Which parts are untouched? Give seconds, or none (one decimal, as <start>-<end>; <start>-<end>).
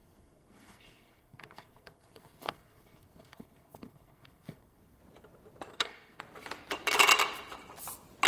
5.0-5.7; 6.2-8.3